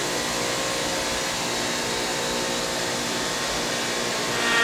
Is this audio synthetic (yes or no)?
no